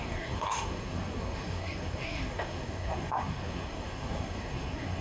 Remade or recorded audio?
remade